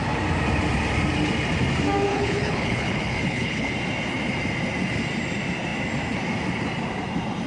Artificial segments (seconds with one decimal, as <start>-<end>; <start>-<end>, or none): 2.1-3.7